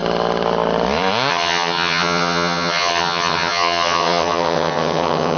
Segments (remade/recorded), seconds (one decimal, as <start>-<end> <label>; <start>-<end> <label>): 0.0-1.3 recorded; 1.3-5.4 remade